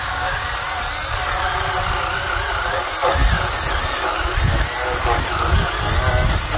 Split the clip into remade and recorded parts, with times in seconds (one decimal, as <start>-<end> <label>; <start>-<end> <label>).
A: 0.0-0.5 remade; 0.5-6.6 recorded